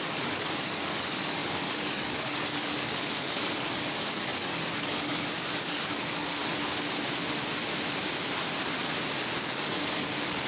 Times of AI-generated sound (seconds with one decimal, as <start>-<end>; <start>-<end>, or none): 0.0-6.4; 9.4-10.5